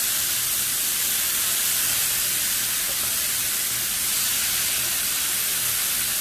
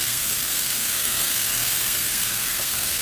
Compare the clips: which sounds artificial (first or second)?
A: second